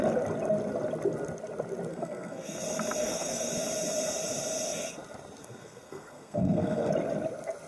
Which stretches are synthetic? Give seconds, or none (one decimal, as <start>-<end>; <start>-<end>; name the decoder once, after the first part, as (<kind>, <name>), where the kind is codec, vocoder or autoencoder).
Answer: 1.9-2.6 (codec, SNAC); 3.0-3.5; 5.4-6.9